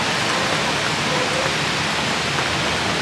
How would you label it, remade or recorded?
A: recorded